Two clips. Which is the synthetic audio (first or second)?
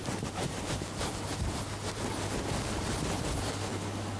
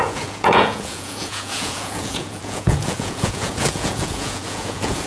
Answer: second